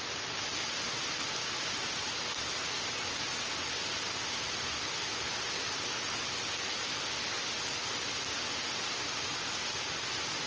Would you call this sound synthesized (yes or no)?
no